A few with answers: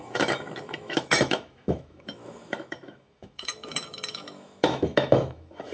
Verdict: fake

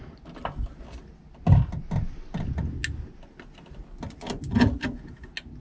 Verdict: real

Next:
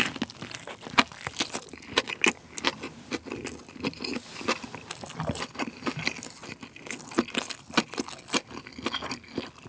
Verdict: real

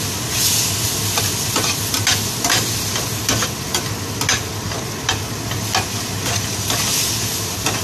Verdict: real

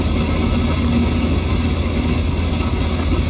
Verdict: real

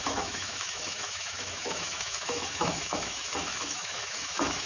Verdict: fake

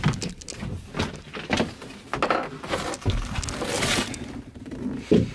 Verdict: real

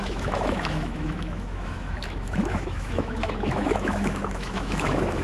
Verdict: fake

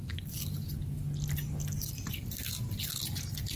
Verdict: real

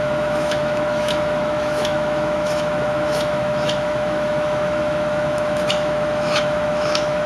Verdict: fake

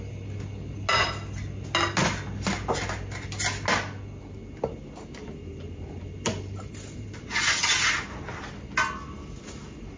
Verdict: real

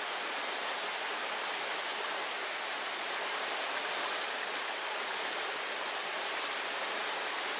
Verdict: real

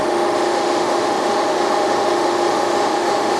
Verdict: fake